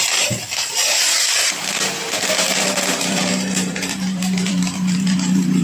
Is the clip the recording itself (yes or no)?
no